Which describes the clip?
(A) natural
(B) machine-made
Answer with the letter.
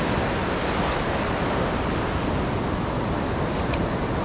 A